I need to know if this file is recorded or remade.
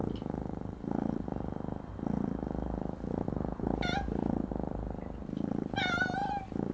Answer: recorded